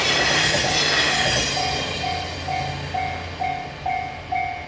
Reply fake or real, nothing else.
real